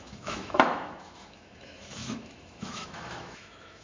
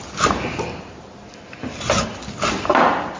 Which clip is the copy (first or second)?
first